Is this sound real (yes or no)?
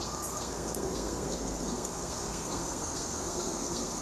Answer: no